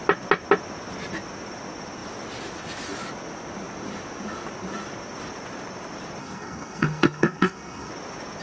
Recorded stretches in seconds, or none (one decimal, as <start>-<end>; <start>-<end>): 0.0-6.2; 7.9-8.4